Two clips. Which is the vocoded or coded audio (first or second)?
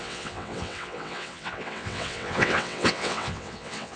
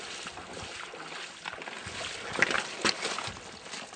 first